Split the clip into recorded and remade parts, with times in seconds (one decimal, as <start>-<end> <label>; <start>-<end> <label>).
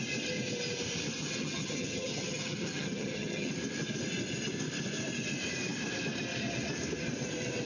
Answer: 0.0-1.2 recorded; 1.2-3.5 remade; 3.5-7.7 recorded